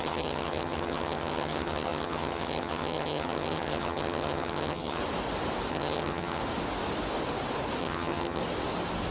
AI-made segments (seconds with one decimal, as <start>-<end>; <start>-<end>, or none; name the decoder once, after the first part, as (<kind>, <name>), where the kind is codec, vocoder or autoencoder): 0.0-5.0 (vocoder, HiFi-GAN); 5.7-6.4; 7.8-8.4